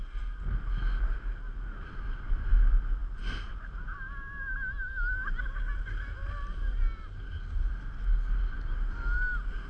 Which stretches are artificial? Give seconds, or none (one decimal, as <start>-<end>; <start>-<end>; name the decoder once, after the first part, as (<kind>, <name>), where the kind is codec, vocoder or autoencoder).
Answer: none